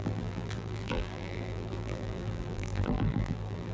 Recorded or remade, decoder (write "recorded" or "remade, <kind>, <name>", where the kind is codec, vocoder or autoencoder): remade, vocoder, BigVGAN v2